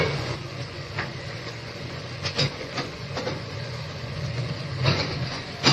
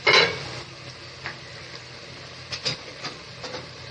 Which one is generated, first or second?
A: first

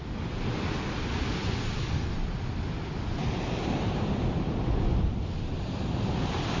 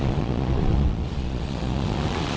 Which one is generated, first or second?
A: second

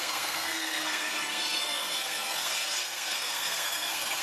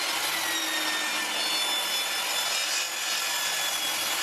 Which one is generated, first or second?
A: first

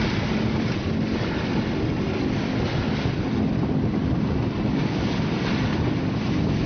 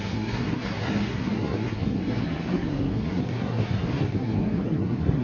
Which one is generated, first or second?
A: second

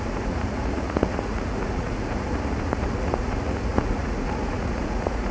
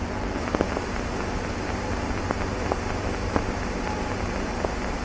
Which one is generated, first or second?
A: first